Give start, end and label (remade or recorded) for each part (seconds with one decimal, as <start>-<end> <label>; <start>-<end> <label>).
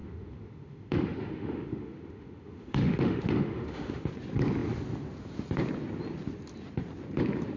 0.0-4.1 remade; 4.1-7.6 recorded